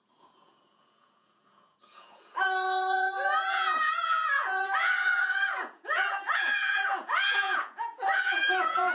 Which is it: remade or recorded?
remade